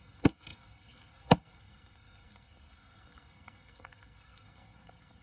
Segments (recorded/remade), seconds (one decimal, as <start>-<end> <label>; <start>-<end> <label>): 0.0-5.2 remade